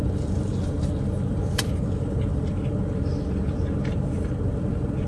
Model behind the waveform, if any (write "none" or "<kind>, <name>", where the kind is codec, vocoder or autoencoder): none